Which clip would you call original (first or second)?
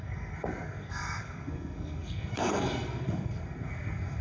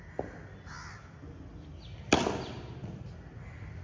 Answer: second